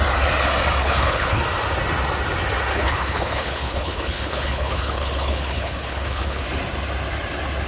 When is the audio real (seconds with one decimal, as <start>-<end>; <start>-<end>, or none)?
0.0-0.8; 1.4-2.7; 6.4-7.7